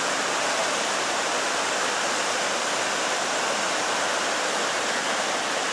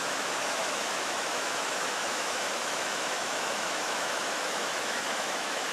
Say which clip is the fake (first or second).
second